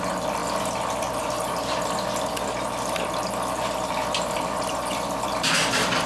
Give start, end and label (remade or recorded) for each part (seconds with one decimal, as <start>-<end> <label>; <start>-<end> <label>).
0.0-6.1 recorded